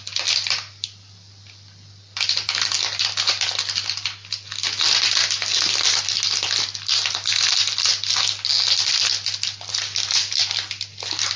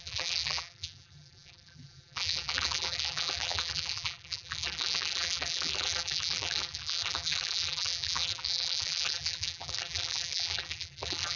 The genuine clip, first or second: first